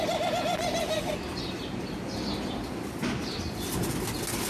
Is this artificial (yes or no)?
no